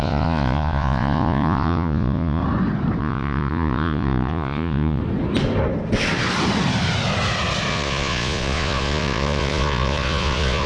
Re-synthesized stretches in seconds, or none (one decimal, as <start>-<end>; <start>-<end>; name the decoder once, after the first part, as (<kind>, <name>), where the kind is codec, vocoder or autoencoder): 0.0-2.4 (vocoder, Vocos); 3.0-5.0; 7.7-10.7